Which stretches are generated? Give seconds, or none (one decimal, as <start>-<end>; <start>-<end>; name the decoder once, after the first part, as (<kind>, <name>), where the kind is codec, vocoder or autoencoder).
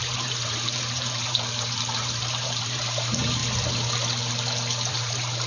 0.0-3.4 (vocoder, BigVGAN v2); 4.9-5.5